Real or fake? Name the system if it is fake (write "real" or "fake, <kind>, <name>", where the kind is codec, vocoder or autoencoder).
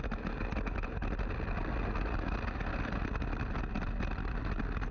real